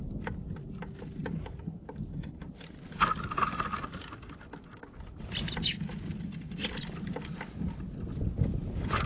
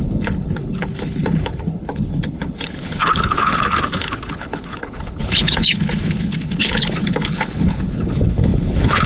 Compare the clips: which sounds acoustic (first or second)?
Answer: first